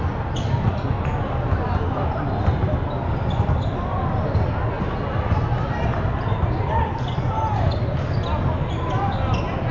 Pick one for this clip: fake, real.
real